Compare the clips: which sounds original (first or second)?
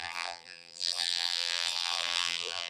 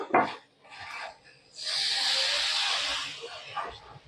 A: second